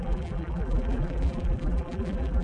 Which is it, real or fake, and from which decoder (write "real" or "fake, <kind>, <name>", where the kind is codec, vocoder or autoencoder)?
fake, vocoder, BigVGAN v2